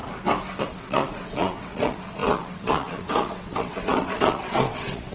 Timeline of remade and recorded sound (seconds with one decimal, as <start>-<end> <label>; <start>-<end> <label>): 0.0-0.6 recorded; 0.6-5.1 remade